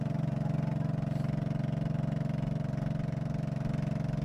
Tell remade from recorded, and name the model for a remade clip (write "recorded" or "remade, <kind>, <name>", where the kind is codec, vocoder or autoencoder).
recorded